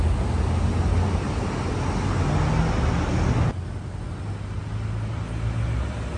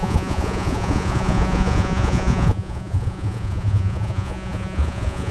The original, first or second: first